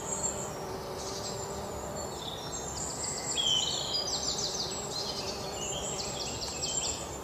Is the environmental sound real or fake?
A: real